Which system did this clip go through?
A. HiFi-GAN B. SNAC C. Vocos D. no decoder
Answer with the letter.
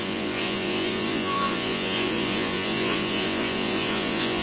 C